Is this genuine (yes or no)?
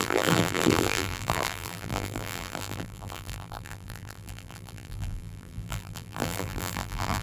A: no